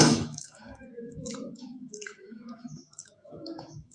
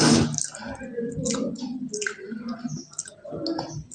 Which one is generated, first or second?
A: first